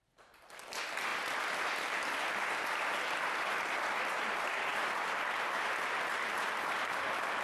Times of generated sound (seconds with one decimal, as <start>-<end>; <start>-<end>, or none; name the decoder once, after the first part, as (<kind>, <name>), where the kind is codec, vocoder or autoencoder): 4.7-5.7 (vocoder, BigVGAN v2)